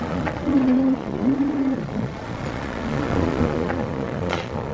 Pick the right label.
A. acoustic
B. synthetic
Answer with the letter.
B